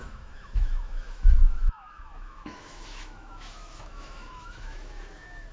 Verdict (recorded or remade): remade